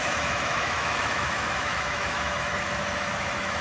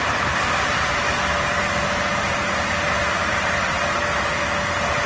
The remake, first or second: first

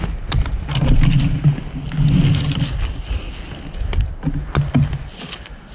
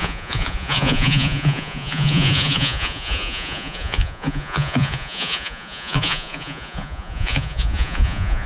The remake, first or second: second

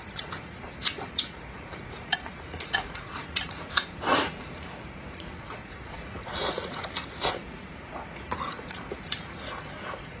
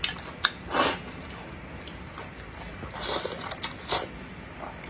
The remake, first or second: first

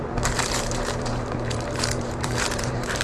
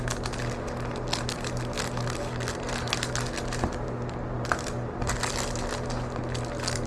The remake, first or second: first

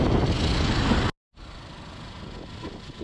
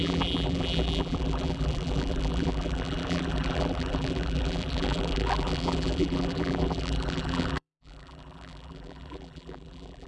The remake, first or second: second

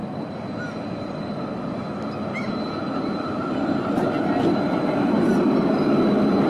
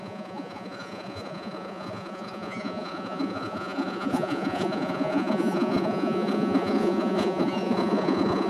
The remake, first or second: second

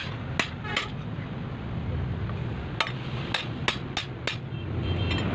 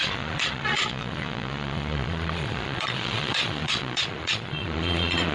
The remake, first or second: second